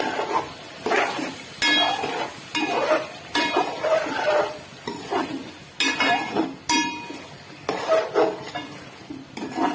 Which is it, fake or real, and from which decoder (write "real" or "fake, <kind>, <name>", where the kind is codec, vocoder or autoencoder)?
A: real